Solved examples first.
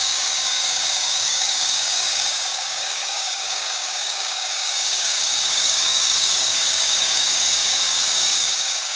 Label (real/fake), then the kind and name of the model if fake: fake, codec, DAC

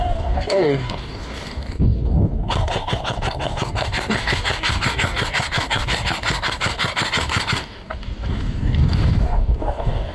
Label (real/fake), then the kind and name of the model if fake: fake, codec, DAC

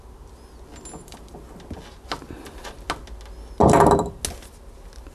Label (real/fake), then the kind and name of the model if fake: real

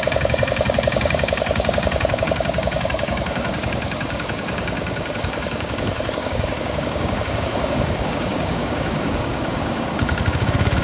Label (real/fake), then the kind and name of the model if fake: fake, codec, DAC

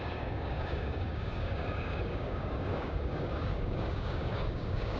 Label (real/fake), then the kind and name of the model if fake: fake, codec, DAC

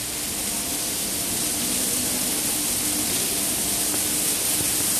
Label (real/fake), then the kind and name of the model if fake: real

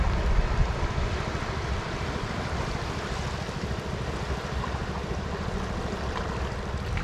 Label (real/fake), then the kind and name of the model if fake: real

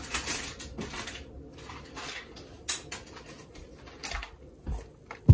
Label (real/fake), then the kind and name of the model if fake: real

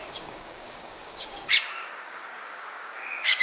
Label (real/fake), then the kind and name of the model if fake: fake, codec, DAC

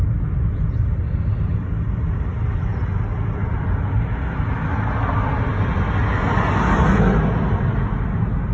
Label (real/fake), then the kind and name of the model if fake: real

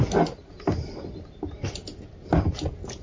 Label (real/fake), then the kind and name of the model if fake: real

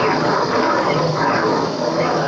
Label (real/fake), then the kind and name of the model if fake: fake, codec, DAC